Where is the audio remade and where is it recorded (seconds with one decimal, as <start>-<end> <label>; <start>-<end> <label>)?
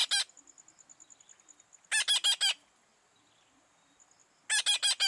0.0-5.1 recorded